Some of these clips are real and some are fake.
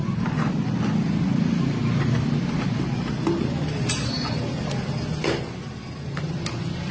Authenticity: real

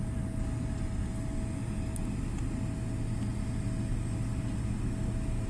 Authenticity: real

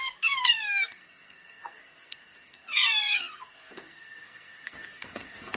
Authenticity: fake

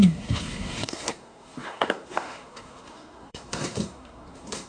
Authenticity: fake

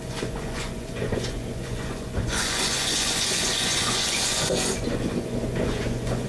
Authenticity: fake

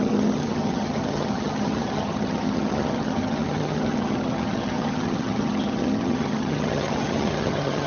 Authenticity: fake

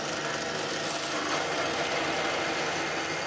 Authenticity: real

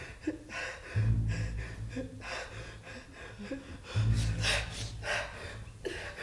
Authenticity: real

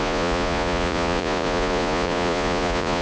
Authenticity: fake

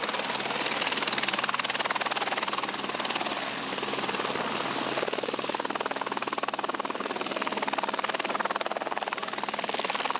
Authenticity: fake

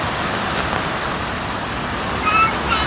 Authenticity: real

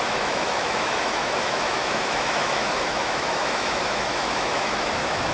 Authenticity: fake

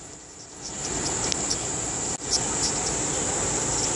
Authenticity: real